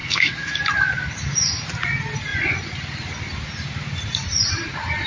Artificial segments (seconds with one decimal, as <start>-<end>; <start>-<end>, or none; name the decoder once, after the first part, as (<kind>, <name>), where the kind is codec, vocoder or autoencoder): 0.0-0.6 (autoencoder, DAC-VAE)